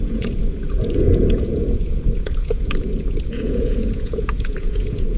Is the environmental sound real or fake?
fake